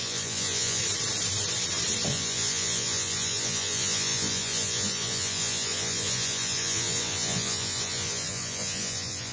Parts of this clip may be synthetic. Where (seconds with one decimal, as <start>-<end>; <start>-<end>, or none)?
0.0-0.8; 2.1-9.3

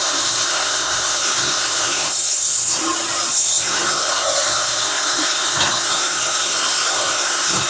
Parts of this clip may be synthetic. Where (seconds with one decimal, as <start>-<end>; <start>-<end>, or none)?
0.0-2.8; 3.3-7.7

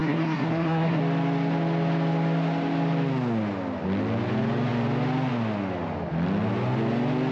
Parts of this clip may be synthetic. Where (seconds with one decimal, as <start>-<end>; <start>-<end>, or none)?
0.0-1.0

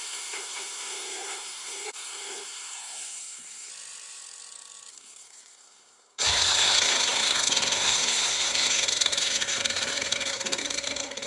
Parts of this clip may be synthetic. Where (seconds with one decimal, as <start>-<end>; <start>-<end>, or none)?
0.0-3.7; 4.9-11.3

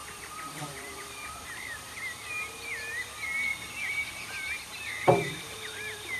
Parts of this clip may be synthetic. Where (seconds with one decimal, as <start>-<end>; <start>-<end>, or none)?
0.0-2.3; 3.5-6.2

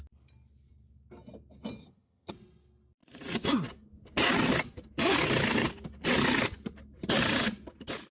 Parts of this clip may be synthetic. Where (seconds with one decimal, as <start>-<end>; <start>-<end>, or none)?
1.8-2.3

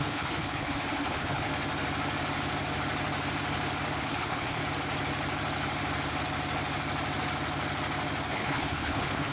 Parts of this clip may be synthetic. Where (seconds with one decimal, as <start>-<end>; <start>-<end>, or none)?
0.0-1.5; 4.0-4.6; 8.3-9.3

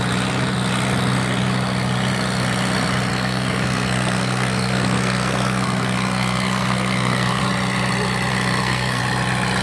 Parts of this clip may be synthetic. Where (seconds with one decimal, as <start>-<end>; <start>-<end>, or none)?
3.1-7.4; 8.3-9.0